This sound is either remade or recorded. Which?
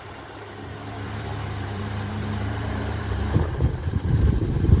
remade